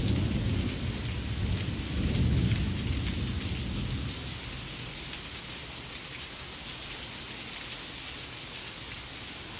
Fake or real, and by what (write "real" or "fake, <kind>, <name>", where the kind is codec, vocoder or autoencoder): real